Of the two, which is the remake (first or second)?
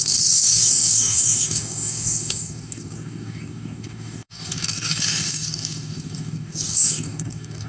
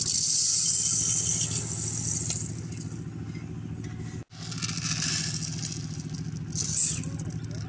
first